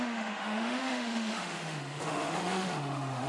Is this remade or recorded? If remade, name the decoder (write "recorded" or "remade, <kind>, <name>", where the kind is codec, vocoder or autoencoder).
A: remade, autoencoder, DAC-VAE